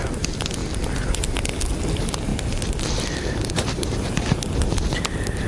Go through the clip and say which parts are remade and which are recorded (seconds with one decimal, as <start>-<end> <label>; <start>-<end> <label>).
0.0-5.5 recorded